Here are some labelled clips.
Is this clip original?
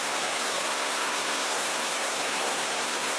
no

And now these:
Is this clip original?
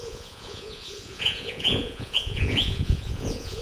no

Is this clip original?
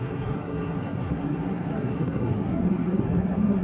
no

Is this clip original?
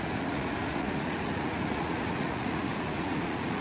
no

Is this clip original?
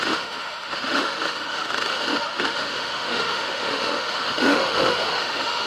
no